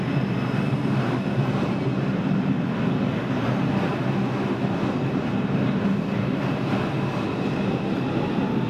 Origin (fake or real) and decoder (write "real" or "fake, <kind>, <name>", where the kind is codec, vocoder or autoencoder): real